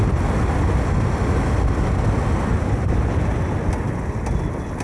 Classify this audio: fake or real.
real